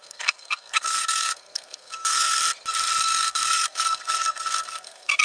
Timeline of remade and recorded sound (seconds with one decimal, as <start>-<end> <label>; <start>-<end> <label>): 0.0-2.4 remade; 2.4-3.0 recorded; 3.0-5.2 remade